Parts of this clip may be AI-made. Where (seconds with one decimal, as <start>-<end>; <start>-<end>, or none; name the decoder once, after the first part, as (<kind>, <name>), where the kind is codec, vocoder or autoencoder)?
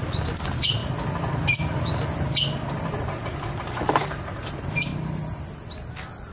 0.0-0.8 (vocoder, BigVGAN v2); 3.0-4.9